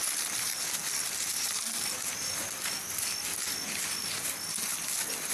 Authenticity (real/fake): real